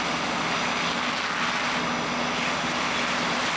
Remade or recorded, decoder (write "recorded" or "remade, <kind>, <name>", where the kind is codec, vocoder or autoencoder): recorded